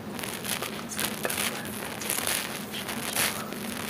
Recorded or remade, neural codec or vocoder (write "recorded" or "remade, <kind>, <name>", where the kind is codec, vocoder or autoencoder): recorded